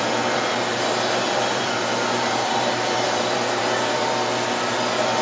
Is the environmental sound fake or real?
fake